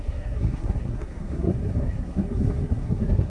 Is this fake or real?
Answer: fake